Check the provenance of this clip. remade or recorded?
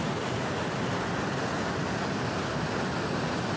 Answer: recorded